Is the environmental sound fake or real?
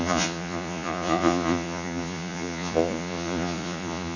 fake